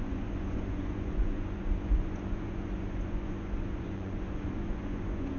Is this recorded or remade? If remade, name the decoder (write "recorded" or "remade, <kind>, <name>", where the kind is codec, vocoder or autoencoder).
remade, vocoder, Vocos